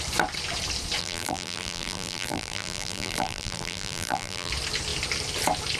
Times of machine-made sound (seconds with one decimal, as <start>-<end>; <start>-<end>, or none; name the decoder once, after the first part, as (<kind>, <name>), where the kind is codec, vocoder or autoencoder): 1.0-4.5 (vocoder, BigVGAN v2)